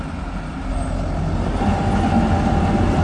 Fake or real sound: real